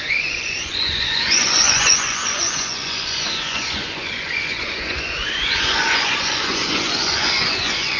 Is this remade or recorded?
remade